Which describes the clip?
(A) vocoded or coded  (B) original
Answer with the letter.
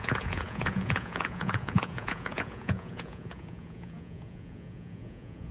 A